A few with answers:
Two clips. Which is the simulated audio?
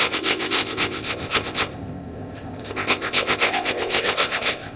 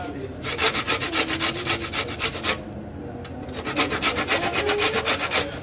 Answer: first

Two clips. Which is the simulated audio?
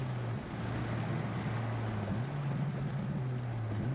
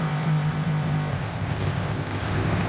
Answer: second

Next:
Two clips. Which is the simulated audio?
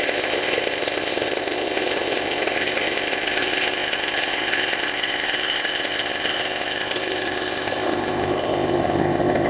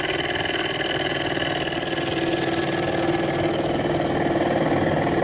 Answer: first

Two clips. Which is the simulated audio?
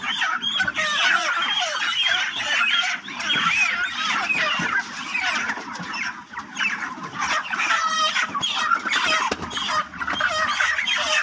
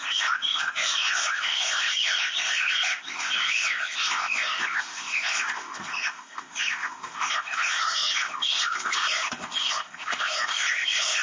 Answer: second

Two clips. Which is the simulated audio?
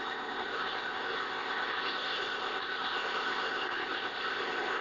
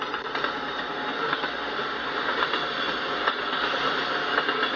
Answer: first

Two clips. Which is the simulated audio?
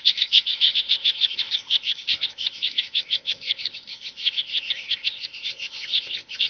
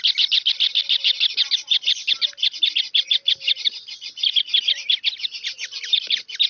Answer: first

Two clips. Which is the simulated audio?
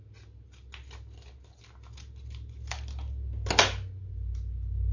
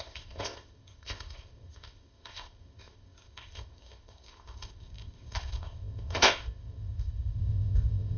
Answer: second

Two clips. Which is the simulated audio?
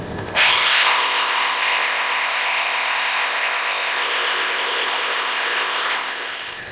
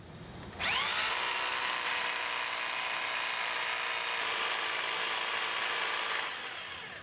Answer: first